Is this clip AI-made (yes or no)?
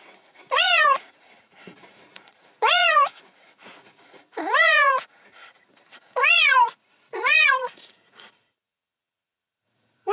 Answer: yes